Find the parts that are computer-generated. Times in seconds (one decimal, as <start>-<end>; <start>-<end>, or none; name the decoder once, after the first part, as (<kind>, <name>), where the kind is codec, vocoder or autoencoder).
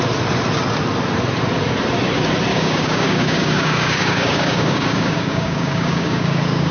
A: 2.5-6.7 (codec, DAC)